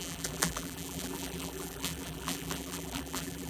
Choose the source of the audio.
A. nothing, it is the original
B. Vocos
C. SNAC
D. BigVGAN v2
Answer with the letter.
D